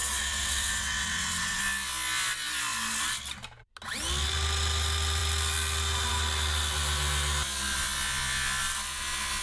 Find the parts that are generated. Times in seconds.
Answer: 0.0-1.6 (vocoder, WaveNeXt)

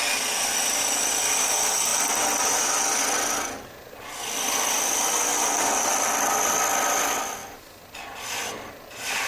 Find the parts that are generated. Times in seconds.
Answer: 1.9-2.6 (vocoder, BigVGAN v2)